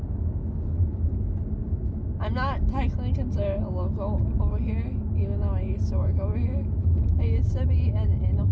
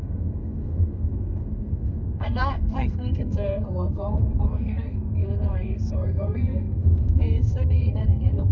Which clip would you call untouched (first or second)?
first